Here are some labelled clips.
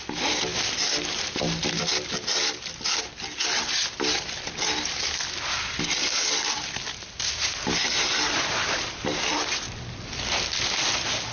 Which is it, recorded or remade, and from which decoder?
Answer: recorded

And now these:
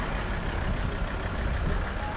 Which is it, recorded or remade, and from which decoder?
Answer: recorded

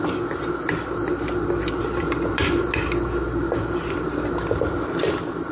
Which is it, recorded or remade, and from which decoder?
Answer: recorded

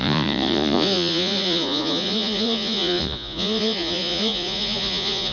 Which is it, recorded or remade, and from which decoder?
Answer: remade, vocoder, Vocos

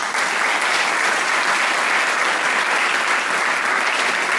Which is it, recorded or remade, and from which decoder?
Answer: recorded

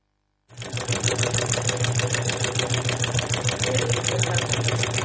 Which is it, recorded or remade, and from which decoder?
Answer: recorded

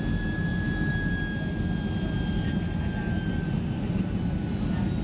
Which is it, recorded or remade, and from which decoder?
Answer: recorded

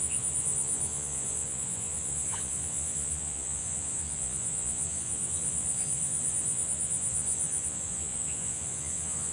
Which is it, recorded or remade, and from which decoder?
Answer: remade, vocoder, Vocos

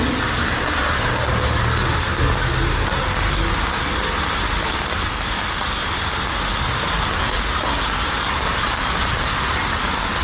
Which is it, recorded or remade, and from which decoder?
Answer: recorded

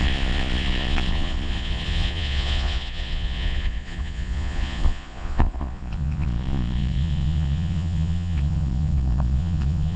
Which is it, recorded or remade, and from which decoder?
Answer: remade, vocoder, Vocos